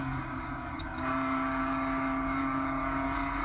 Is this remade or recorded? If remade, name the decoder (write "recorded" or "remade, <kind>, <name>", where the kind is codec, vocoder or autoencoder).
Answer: remade, codec, DAC